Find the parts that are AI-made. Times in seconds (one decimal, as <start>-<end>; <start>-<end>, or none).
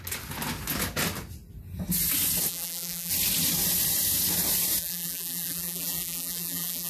2.5-3.1; 4.8-6.9